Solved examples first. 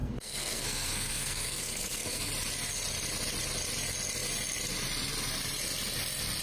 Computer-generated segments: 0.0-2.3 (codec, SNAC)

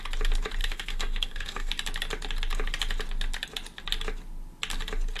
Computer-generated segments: 0.6-1.7 (codec, SNAC)

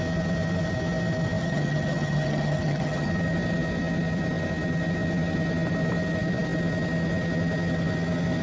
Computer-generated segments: 1.4-3.1 (vocoder, HiFi-GAN)

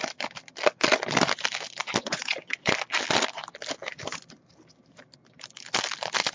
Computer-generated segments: 2.0-2.7 (vocoder, WaveNeXt)